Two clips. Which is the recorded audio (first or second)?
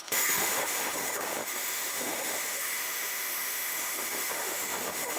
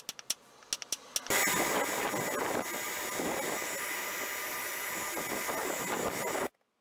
second